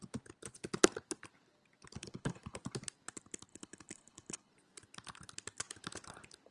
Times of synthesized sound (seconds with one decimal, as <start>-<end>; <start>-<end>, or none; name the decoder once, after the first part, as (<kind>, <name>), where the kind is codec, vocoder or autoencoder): 2.0-2.6 (codec, HILCodec); 3.5-4.5